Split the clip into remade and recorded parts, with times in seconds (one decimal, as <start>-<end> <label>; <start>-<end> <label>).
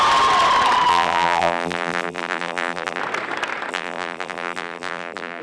0.0-0.9 recorded; 0.9-3.0 remade; 3.0-3.7 recorded; 3.7-5.4 remade